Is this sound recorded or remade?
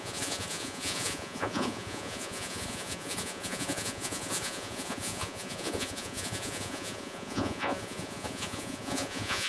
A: remade